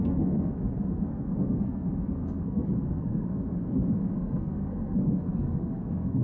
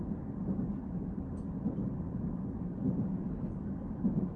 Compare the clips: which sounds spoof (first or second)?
first